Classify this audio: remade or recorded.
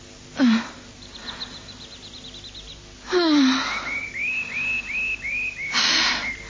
recorded